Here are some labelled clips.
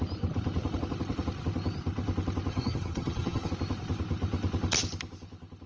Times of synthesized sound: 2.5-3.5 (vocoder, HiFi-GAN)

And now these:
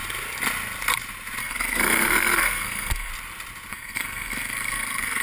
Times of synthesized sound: 1.4-3.1 (codec, SNAC); 3.7-5.2

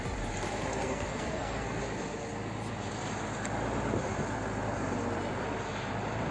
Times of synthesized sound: 0.8-1.8 (codec, SNAC)

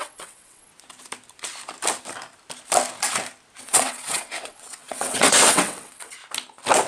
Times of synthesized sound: 0.0-0.7 (vocoder, WaveNeXt); 3.6-6.2

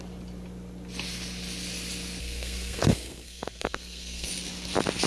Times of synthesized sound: 2.2-4.3 (codec, SNAC)

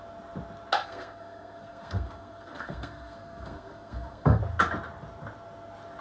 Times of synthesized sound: 0.8-4.4 (codec, SNAC)

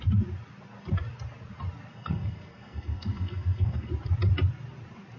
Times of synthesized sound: 1.9-3.9 (codec, SNAC)